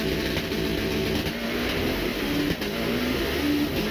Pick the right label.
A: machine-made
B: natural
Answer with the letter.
B